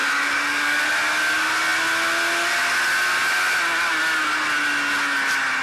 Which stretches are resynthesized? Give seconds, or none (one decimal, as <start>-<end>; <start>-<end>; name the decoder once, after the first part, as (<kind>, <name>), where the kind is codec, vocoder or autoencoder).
0.0-0.8 (codec, DAC)